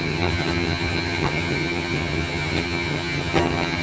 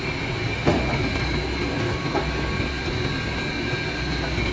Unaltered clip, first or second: second